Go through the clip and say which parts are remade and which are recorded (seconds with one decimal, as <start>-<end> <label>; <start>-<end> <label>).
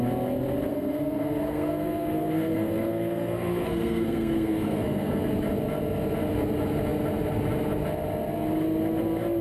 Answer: 0.0-0.7 recorded; 0.7-5.2 remade; 5.2-9.4 recorded